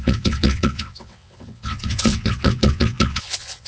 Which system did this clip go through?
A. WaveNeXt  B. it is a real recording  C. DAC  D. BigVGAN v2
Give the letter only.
A